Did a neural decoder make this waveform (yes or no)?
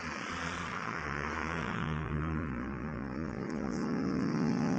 yes